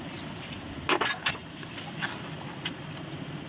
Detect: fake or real real